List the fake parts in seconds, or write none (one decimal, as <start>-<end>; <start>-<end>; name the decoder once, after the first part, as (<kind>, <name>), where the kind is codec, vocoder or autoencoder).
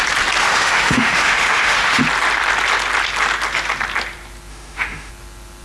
0.4-2.0 (autoencoder, DAC-VAE); 4.5-5.1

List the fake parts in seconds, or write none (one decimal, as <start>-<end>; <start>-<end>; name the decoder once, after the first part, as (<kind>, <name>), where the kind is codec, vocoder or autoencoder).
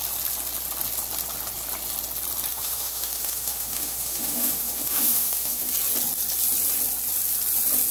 2.5-5.7 (autoencoder, DAC-VAE)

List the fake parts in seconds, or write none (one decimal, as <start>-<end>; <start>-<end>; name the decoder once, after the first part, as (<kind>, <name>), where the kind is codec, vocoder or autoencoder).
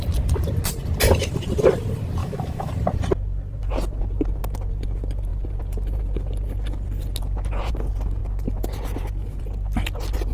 2.2-2.7 (autoencoder, DAC-VAE)